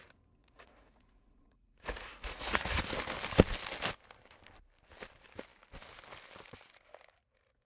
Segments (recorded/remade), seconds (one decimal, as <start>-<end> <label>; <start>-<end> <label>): 0.0-0.4 recorded; 0.4-2.8 remade; 2.8-7.6 recorded

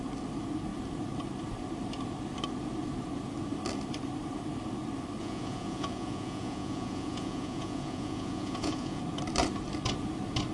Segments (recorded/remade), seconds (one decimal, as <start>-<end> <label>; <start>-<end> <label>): 0.0-5.2 recorded; 5.2-9.0 remade; 9.0-10.5 recorded

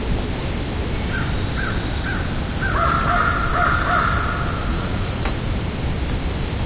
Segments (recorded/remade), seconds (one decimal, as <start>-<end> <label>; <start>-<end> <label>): 0.0-4.7 recorded; 4.7-5.3 remade; 5.3-6.7 recorded